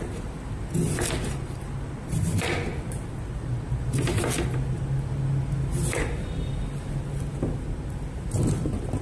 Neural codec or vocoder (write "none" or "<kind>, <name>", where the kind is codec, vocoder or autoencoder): none